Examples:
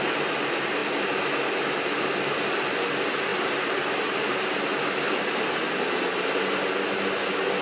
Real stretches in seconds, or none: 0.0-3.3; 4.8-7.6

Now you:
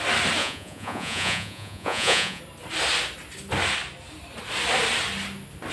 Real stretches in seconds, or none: 0.0-0.4; 2.4-5.7

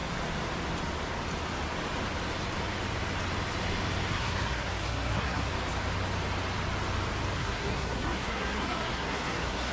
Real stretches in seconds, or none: 0.0-4.1; 5.5-7.4

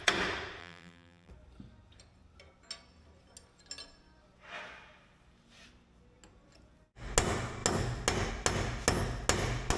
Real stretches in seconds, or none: 0.0-0.6; 1.3-9.8

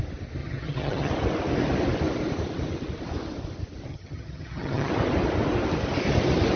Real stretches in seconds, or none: 0.0-0.4; 1.1-3.9; 4.9-6.6

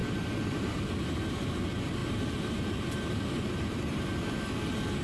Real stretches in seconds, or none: 0.8-2.0; 4.0-5.0